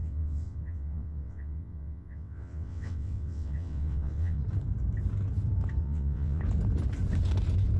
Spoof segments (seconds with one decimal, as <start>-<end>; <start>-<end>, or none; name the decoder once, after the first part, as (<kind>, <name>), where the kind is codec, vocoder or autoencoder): 0.0-4.4 (vocoder, WaveNeXt); 5.8-6.4